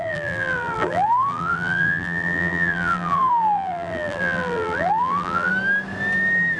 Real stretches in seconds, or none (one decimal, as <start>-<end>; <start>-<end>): 5.5-6.6